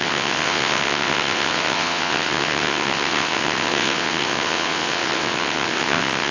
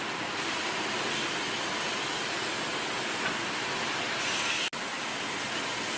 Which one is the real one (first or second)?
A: second